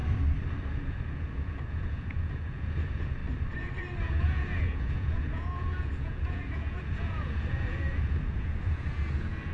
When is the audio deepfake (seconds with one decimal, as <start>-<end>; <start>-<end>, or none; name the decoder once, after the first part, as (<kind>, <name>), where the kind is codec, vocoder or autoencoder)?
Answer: 0.7-3.2 (vocoder, Vocos); 4.1-9.5